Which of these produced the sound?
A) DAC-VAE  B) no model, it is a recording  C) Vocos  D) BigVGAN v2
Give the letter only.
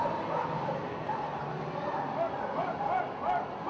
B